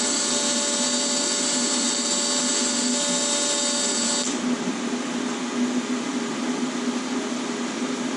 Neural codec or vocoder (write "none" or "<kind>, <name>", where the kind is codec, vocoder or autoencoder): none